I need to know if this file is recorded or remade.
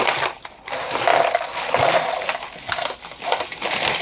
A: recorded